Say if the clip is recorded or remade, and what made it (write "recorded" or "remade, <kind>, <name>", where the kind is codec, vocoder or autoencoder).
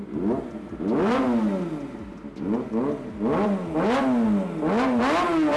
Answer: recorded